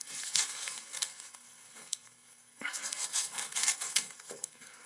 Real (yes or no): no